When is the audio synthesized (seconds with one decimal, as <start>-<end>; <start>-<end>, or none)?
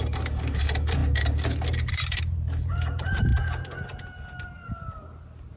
0.0-1.0; 1.9-3.3